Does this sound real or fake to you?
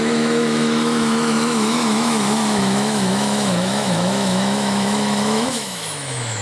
fake